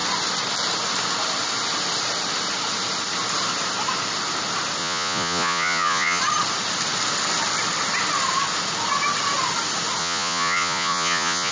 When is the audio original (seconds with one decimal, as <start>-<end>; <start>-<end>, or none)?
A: 0.0-4.8; 6.2-10.0